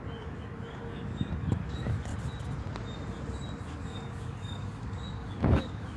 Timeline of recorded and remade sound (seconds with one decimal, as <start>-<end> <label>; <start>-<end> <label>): 0.0-2.1 remade; 2.1-3.7 recorded; 3.7-6.0 remade